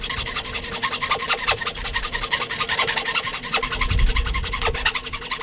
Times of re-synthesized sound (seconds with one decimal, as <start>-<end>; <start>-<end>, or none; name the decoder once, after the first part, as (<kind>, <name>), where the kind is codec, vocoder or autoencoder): none